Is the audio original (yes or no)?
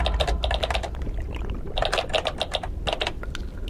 yes